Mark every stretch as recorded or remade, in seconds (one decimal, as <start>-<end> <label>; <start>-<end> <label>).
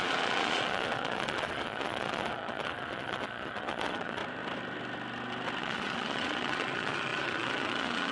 0.0-4.2 remade; 4.2-5.6 recorded; 5.6-8.1 remade